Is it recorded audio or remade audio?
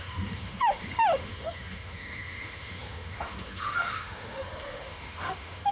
remade